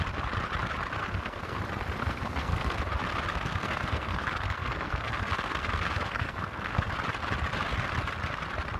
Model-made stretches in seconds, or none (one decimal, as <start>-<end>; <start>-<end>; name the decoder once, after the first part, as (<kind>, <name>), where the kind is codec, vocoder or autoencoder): 1.0-1.6 (codec, SNAC); 2.0-2.8; 3.3-6.9